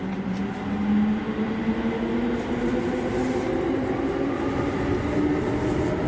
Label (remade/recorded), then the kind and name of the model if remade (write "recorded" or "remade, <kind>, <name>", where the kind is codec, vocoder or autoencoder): recorded